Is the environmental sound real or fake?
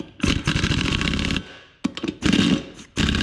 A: real